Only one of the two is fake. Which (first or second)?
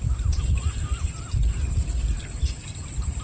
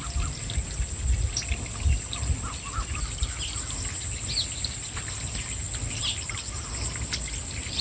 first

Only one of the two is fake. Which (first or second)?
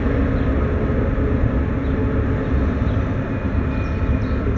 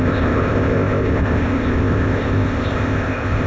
second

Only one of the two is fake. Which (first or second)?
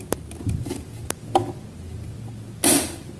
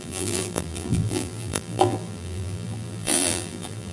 second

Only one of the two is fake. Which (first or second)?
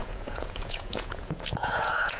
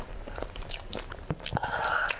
first